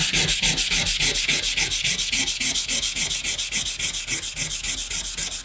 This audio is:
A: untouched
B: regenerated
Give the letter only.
A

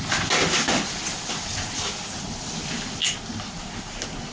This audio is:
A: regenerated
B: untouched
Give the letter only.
B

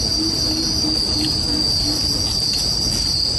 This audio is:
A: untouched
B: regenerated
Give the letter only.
A